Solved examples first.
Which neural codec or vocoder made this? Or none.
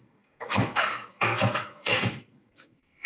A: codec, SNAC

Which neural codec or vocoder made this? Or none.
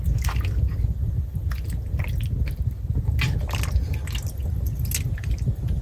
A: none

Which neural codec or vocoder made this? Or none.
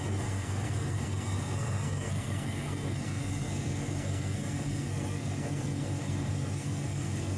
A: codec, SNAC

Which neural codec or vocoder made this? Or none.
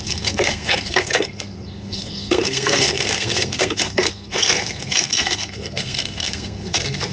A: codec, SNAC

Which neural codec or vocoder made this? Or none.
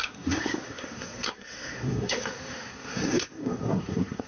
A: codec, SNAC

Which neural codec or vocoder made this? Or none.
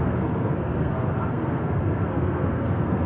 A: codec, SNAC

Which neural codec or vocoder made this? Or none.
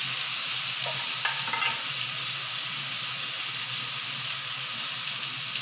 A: none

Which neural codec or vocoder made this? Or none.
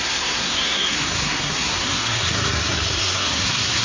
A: codec, SNAC